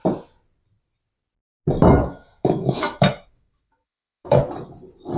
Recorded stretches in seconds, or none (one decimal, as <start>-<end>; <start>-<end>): 0.0-2.0; 4.4-5.2